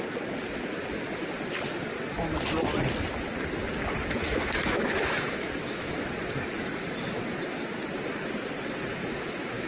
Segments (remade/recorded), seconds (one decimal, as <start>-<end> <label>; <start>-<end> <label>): 0.0-4.0 recorded; 4.0-5.9 remade; 5.9-8.9 recorded; 8.9-9.7 remade